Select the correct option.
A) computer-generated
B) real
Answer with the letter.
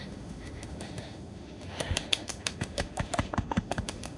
A